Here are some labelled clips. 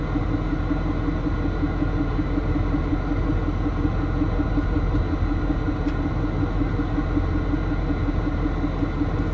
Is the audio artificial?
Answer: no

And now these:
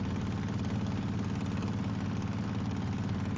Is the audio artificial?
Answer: no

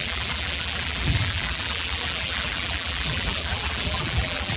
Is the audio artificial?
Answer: yes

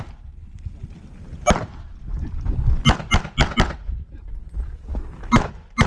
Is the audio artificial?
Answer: no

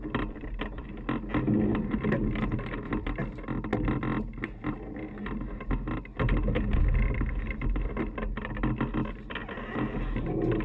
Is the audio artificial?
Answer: no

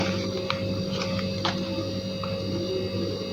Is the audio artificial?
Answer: no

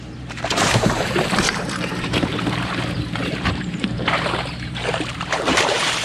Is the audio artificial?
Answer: yes